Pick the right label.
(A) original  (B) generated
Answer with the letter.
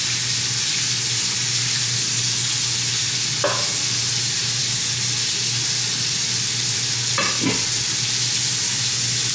A